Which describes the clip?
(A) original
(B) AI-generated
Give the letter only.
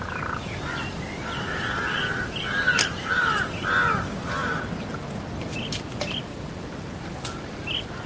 B